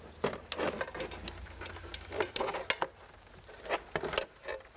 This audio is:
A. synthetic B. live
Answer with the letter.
B